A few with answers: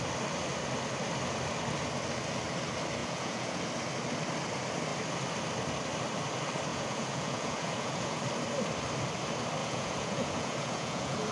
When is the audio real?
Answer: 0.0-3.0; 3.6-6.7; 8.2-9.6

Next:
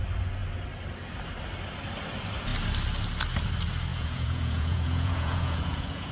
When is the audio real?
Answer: 0.0-3.9

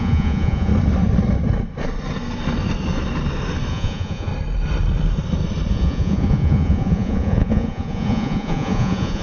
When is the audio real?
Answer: 0.7-3.7; 4.3-5.7